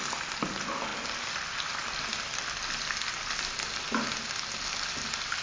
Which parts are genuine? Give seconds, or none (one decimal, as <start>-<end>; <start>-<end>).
0.0-5.4